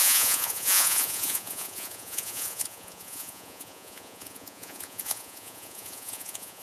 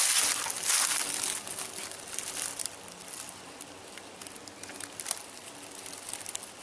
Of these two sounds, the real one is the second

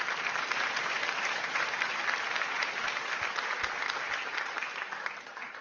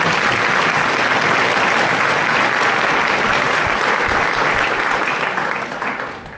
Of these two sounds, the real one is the second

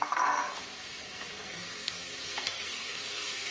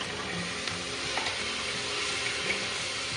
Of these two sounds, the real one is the second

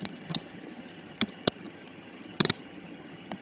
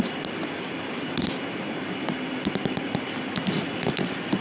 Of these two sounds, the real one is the second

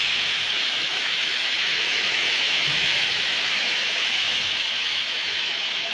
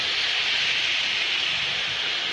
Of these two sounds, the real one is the second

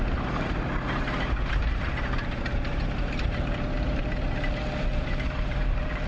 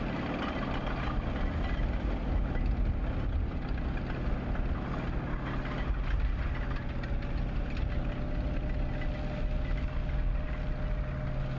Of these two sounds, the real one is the second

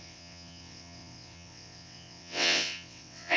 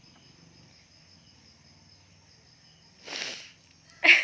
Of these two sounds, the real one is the second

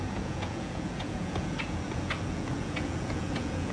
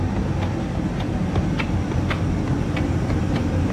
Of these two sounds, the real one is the second